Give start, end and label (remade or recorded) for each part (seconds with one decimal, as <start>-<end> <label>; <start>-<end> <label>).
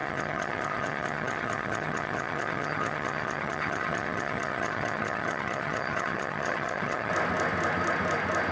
0.0-7.1 remade; 7.1-8.5 recorded